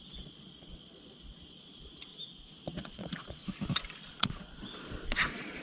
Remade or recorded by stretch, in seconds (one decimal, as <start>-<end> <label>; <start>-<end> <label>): 0.0-2.1 remade; 2.1-2.6 recorded; 2.6-3.4 remade; 3.4-4.1 recorded; 4.1-5.6 remade